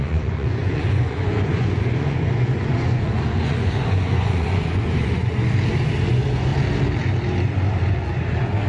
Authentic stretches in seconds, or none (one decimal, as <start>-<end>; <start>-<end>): 5.3-6.1; 6.5-7.9